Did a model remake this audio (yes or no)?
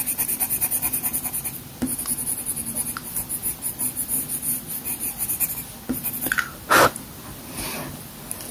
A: no